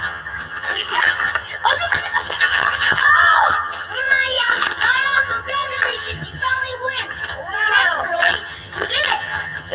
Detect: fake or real fake